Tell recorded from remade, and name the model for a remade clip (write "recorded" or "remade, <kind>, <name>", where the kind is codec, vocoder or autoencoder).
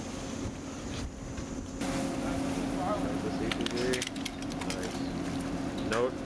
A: recorded